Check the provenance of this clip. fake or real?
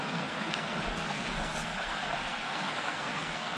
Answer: fake